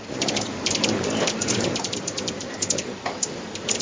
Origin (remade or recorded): remade